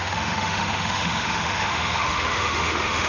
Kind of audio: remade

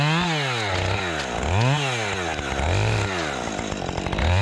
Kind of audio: recorded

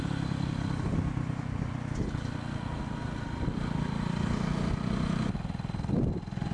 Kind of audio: recorded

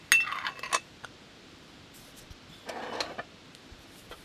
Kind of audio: recorded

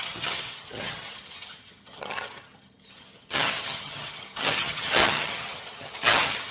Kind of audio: remade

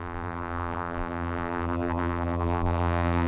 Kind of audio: remade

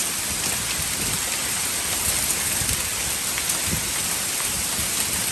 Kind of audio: recorded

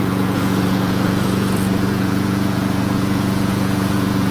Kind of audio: remade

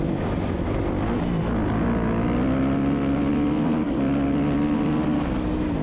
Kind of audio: recorded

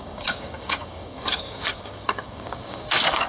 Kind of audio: remade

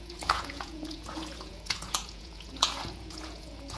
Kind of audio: remade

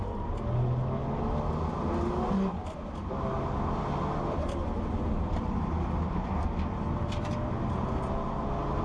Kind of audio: recorded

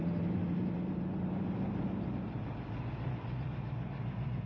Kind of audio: recorded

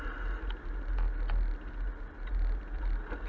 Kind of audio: recorded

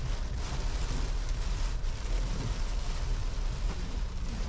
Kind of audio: recorded